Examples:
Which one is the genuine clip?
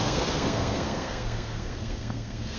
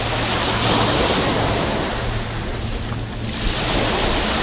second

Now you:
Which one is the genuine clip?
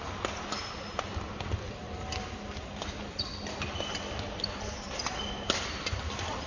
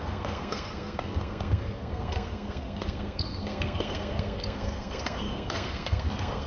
first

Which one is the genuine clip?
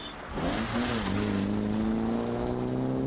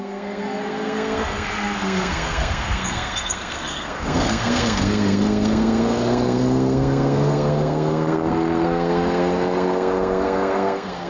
first